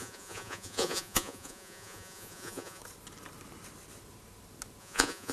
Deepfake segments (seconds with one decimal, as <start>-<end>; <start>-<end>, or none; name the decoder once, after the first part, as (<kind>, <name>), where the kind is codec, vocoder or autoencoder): 0.0-2.8 (vocoder, Vocos); 4.8-5.3